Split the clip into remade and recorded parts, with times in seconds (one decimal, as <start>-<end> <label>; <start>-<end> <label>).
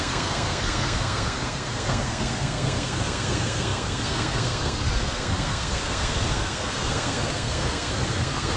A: 0.0-8.6 remade